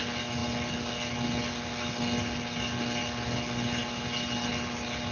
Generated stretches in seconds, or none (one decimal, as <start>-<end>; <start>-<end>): none